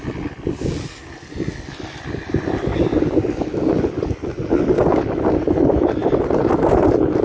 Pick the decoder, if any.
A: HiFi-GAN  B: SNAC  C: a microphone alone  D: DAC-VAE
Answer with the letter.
C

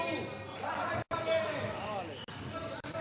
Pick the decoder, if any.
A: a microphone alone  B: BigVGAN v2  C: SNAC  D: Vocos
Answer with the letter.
A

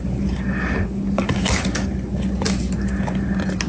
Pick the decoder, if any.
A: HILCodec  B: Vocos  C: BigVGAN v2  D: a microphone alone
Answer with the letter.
D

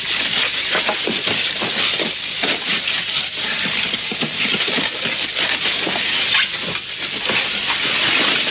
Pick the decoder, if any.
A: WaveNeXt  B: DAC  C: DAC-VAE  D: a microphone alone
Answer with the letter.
D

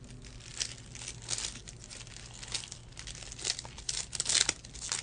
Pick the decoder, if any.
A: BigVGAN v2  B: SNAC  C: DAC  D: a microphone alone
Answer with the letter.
D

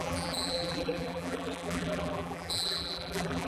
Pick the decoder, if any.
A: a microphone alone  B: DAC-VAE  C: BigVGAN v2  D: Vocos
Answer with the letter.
C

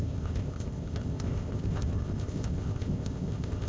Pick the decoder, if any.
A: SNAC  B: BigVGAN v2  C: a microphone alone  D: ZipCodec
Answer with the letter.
D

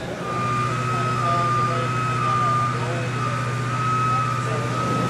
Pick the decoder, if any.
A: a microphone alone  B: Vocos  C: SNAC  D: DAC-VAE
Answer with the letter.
A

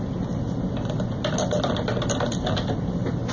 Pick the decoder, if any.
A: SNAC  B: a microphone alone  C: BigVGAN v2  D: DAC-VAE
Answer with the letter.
B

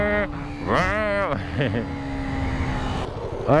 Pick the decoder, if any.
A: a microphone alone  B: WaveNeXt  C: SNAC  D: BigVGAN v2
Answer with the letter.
A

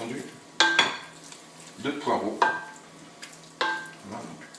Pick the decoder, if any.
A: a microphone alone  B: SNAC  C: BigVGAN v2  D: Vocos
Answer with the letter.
A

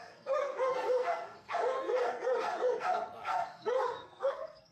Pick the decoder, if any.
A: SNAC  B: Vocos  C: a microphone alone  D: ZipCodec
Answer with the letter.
A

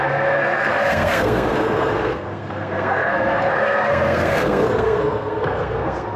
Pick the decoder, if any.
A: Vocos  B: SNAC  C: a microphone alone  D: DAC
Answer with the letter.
B